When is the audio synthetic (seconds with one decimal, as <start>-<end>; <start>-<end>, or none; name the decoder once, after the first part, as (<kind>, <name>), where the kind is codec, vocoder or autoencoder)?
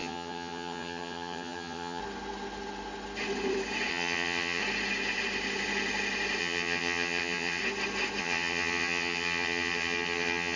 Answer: 0.0-2.0 (vocoder, HiFi-GAN); 3.9-4.6; 6.4-7.6; 8.2-10.6